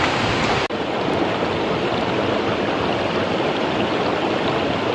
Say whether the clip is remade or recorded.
recorded